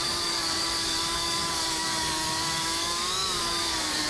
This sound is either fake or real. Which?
fake